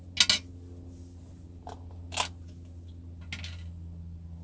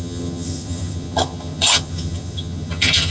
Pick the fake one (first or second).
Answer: second